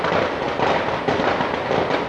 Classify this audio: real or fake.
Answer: real